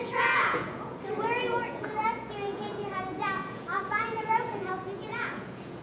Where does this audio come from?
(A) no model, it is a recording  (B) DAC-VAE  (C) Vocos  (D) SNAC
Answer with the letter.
C